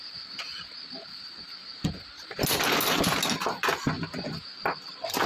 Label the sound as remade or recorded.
recorded